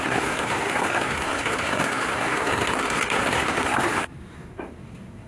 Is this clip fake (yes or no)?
yes